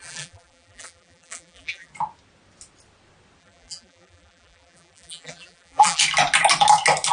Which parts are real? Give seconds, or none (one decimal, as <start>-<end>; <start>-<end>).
1.9-3.4; 6.0-7.1